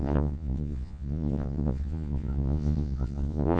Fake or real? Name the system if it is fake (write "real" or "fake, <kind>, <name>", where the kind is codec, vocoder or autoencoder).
fake, vocoder, Vocos